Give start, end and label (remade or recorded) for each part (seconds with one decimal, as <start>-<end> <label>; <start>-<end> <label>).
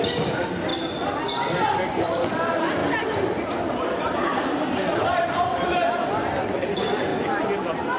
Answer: 0.0-0.7 remade; 0.7-1.8 recorded; 1.8-2.8 remade; 2.8-4.7 recorded; 4.7-8.0 remade